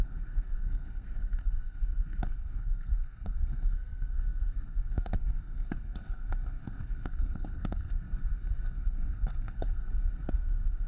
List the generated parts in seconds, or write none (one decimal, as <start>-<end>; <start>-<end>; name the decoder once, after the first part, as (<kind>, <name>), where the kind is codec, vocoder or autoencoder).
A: 0.0-10.9 (codec, SNAC)